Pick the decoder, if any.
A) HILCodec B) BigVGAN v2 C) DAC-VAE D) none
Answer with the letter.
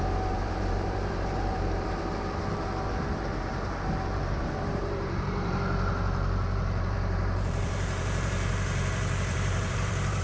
B